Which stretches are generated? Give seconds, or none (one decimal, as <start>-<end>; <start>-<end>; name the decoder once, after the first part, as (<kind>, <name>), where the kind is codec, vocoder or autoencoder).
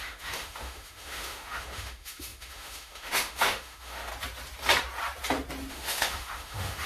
0.0-4.1 (autoencoder, DAC-VAE); 5.7-6.9